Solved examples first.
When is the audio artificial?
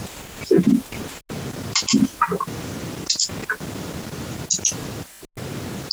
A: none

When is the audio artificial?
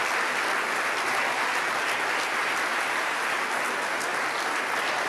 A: 2.7-3.2 (vocoder, BigVGAN v2)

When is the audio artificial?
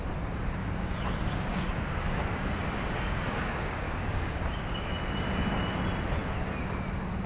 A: 0.6-4.9 (codec, DAC)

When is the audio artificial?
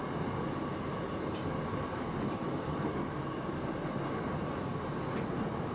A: 1.7-3.2 (codec, DAC)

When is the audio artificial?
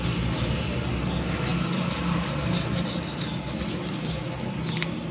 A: 1.5-3.3 (vocoder, BigVGAN v2)